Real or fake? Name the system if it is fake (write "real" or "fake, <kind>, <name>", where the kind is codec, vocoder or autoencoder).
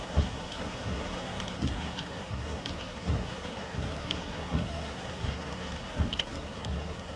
fake, codec, SNAC